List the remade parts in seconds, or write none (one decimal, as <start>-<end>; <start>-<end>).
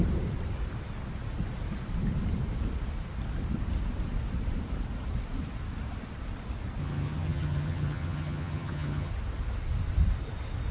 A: 6.8-9.1